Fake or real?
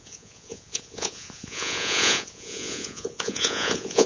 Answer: fake